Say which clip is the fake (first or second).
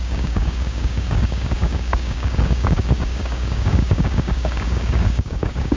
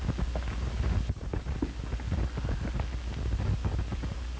first